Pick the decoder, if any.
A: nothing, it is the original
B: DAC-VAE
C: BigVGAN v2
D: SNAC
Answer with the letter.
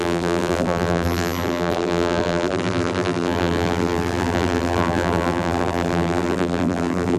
C